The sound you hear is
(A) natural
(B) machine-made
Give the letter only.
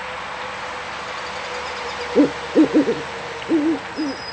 A